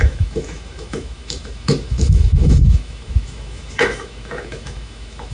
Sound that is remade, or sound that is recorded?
remade